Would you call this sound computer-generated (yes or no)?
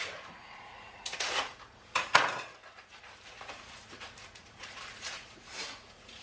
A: yes